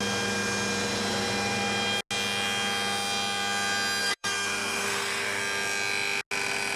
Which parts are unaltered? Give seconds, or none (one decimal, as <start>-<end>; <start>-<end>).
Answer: 0.0-4.0; 5.4-6.8